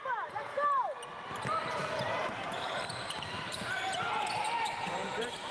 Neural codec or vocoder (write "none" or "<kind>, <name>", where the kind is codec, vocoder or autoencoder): vocoder, BigVGAN v2